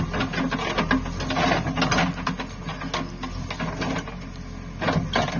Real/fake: real